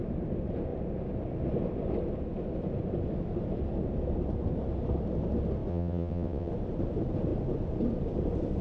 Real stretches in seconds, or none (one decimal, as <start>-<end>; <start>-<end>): 0.0-5.7; 6.5-8.6

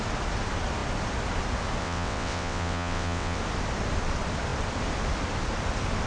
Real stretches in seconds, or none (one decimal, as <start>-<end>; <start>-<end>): 0.0-1.8; 3.4-6.1

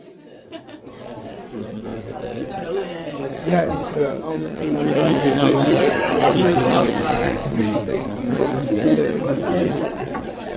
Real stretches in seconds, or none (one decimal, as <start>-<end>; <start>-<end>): none